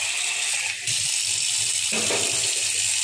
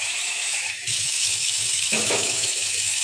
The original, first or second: first